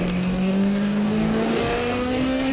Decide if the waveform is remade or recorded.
remade